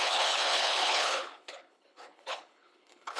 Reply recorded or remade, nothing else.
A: remade